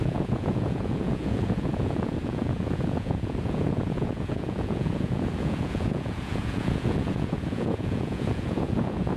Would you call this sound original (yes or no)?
no